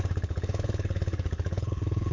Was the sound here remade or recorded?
remade